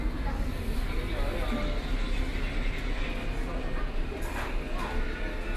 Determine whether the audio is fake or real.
real